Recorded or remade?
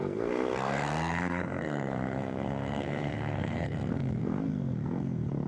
remade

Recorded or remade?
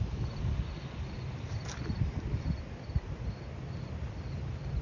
recorded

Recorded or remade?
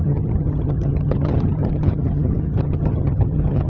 remade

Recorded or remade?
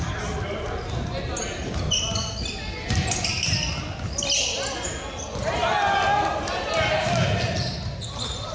recorded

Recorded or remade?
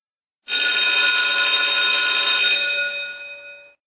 recorded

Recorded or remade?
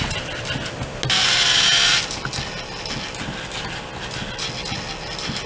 recorded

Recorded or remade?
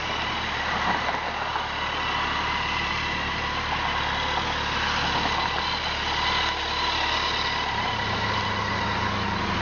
recorded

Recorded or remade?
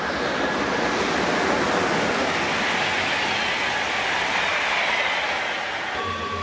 recorded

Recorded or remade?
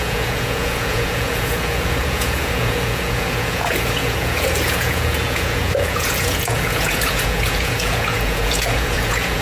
remade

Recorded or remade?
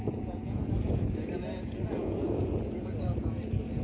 remade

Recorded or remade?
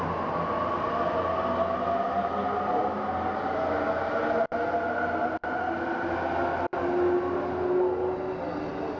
recorded